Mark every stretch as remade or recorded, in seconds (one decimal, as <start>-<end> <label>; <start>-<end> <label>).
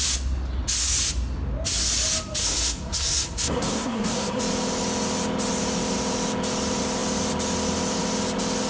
0.0-2.4 recorded; 2.4-4.4 remade; 4.4-8.7 recorded